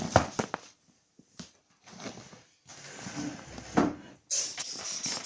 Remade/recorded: recorded